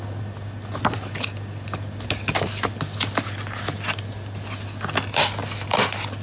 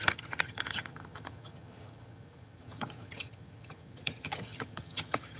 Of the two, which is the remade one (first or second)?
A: second